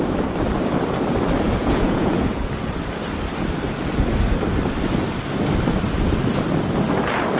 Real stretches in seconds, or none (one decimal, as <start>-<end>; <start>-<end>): 0.0-1.6; 2.5-7.4

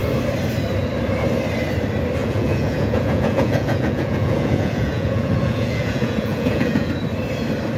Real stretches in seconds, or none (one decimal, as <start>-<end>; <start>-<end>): 0.0-2.2; 6.9-7.8